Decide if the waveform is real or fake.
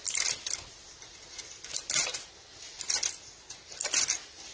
real